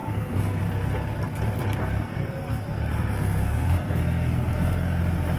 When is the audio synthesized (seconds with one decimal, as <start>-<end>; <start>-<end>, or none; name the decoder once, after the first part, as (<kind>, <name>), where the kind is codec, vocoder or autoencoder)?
0.0-0.6 (codec, SNAC); 1.8-5.0